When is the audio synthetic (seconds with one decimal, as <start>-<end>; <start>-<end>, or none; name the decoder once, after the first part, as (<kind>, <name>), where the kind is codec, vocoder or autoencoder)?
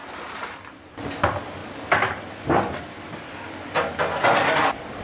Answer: none